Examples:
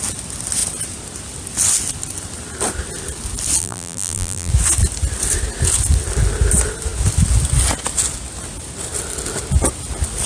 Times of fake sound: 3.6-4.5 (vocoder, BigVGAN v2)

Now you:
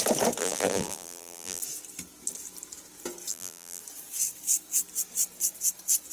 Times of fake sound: 0.4-1.6 (vocoder, BigVGAN v2); 3.3-3.8